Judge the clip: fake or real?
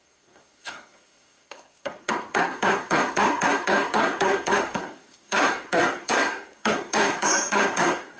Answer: fake